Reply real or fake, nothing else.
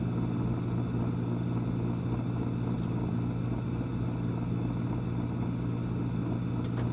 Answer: real